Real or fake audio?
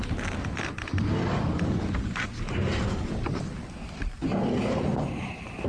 real